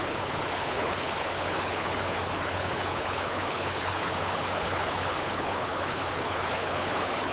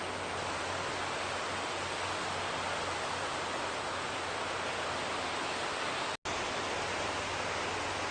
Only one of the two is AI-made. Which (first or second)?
first